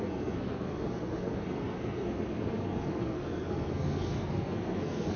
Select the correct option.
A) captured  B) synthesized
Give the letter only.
B